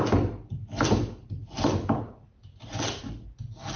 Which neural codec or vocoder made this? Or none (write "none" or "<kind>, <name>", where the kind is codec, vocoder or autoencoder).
none